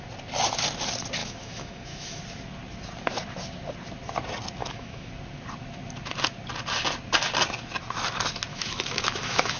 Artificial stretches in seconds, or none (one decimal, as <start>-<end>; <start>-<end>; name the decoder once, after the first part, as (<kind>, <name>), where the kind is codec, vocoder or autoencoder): 1.2-2.2 (autoencoder, DAC-VAE); 4.6-5.1; 8.5-9.6